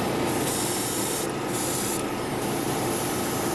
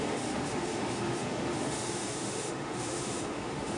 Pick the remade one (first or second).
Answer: second